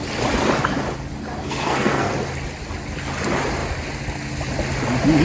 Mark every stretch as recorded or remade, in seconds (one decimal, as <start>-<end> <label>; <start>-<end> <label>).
0.0-1.4 recorded; 1.4-2.1 remade; 2.1-5.2 recorded